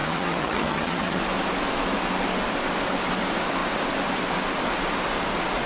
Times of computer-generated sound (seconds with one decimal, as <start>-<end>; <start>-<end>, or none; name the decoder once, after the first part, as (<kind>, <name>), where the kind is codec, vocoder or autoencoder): 0.0-1.2 (vocoder, HiFi-GAN)